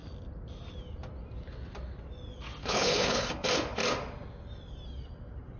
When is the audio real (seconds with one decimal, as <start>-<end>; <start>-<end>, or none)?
0.0-2.6; 3.3-5.6